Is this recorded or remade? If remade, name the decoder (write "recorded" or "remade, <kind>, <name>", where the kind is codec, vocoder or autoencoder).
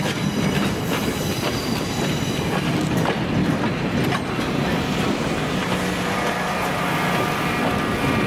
recorded